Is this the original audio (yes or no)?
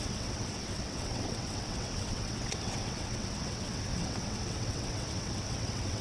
no